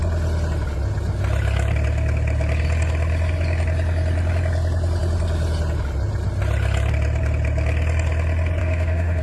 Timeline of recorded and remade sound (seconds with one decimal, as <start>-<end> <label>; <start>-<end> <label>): 0.0-8.6 recorded; 8.6-9.2 remade